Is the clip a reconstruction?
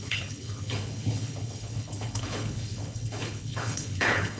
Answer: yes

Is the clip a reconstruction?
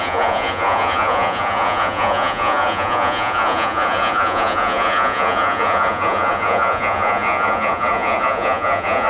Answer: yes